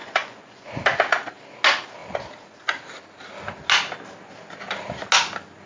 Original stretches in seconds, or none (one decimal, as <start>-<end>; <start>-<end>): 0.7-5.7